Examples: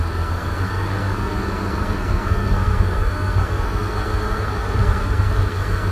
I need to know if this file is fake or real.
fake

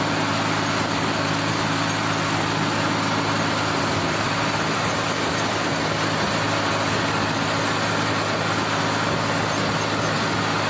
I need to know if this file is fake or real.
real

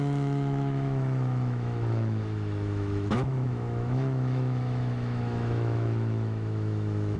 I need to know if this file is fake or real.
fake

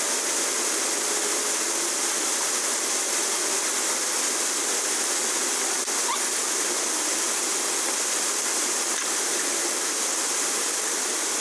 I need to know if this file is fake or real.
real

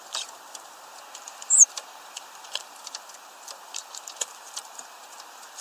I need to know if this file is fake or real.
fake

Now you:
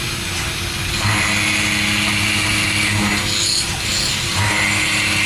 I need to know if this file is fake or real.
real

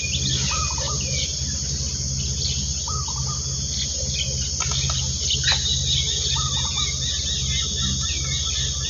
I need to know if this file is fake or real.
real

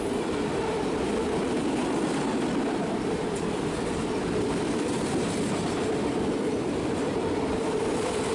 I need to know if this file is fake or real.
fake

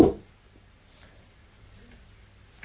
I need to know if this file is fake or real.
real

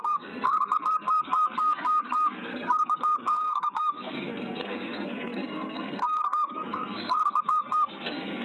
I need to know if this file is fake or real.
fake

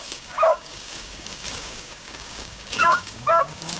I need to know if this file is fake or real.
fake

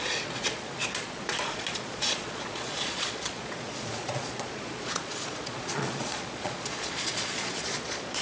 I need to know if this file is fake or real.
fake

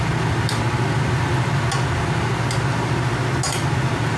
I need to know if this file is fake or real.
real